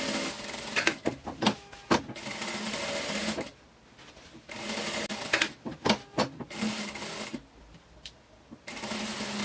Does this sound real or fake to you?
real